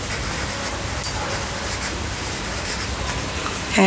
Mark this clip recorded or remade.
recorded